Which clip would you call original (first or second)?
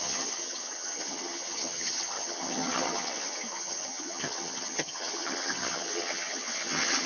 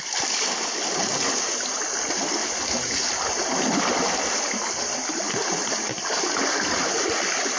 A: second